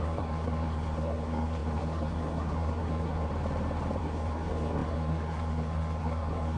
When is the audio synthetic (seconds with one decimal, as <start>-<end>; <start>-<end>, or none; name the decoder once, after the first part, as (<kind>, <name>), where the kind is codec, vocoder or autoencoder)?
0.0-3.3 (codec, SNAC); 4.0-6.6